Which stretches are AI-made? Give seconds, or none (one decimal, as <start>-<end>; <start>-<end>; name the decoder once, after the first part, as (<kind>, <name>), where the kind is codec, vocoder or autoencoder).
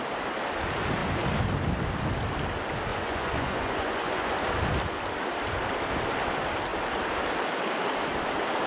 2.9-4.3 (vocoder, Vocos)